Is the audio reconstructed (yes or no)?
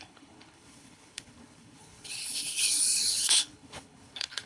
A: yes